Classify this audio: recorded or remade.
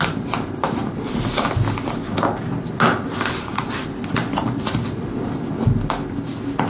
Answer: recorded